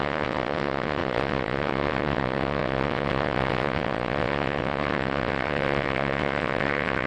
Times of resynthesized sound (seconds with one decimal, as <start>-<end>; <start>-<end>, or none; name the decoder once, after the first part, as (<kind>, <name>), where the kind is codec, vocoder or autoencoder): 0.0-7.1 (vocoder, WaveNeXt)